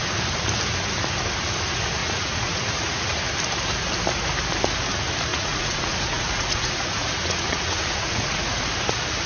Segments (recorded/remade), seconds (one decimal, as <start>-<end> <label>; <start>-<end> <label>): 0.0-2.0 recorded; 2.0-3.2 remade; 3.2-5.3 recorded; 5.3-8.6 remade; 8.6-9.3 recorded